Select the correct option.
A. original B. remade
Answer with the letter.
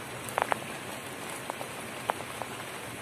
A